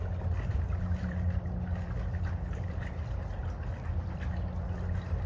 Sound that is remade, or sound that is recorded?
recorded